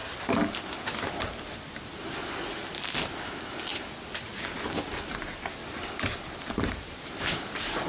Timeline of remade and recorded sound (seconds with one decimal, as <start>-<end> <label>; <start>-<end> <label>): 0.0-4.3 recorded; 4.3-4.9 remade; 4.9-5.6 recorded; 5.6-7.3 remade; 7.3-7.9 recorded